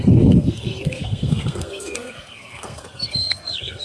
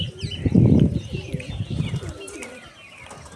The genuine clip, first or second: second